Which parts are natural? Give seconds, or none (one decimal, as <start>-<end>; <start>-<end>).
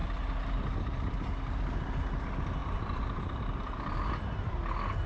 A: 0.0-5.1